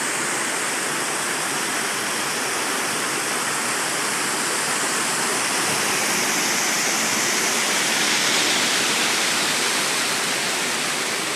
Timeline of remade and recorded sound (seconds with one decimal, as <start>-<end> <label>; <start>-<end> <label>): 0.0-5.3 recorded; 5.3-6.0 remade; 6.0-11.4 recorded